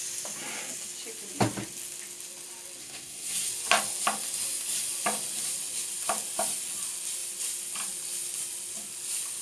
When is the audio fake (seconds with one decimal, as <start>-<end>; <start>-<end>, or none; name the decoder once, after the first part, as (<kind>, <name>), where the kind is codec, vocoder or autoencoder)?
2.8-3.5 (codec, SNAC)